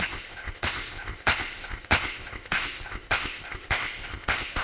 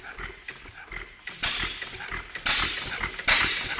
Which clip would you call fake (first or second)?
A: first